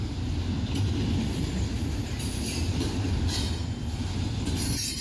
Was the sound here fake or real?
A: real